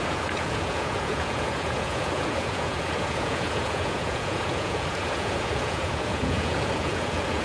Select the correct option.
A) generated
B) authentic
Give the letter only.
A